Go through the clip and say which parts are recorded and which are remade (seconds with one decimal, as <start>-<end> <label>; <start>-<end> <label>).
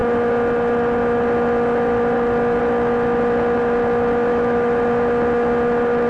0.0-4.3 recorded; 4.3-4.8 remade; 4.8-6.1 recorded